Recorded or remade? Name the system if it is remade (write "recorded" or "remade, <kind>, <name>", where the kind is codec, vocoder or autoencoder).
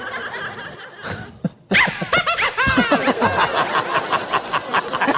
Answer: recorded